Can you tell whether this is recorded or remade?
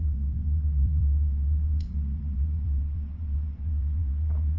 remade